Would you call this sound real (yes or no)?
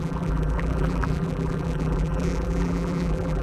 no